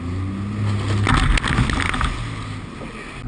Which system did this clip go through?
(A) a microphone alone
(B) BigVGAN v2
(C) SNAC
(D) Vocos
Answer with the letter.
A